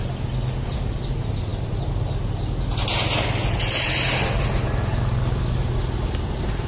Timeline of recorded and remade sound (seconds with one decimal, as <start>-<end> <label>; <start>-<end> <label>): 0.0-6.7 recorded